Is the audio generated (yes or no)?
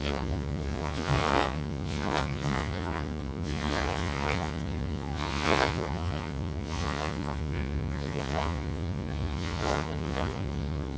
yes